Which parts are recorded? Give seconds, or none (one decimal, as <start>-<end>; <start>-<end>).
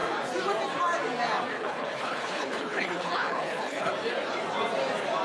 0.0-1.5; 3.9-5.2